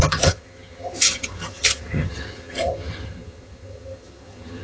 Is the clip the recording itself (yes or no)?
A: no